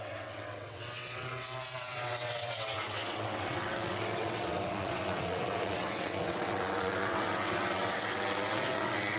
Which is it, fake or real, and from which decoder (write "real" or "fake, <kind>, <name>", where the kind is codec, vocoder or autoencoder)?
fake, vocoder, WaveNeXt